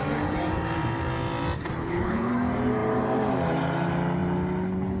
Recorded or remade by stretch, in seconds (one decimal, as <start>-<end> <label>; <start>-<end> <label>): 0.0-1.8 recorded; 1.8-2.3 remade; 2.3-5.0 recorded